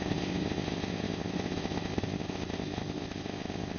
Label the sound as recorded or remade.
remade